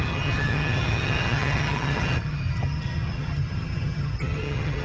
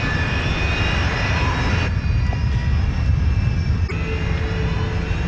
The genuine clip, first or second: second